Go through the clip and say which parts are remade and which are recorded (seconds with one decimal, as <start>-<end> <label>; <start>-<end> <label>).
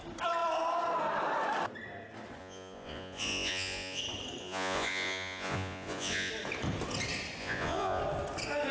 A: 0.0-2.4 recorded; 2.4-4.0 remade; 4.0-4.4 recorded; 4.4-6.3 remade; 6.3-7.4 recorded; 7.4-8.0 remade; 8.0-8.7 recorded